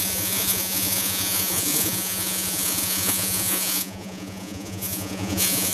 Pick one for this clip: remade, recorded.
remade